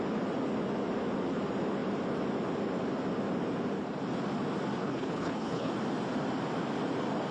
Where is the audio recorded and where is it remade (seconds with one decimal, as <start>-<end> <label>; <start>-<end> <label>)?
0.0-4.8 recorded; 4.8-5.7 remade; 5.7-7.3 recorded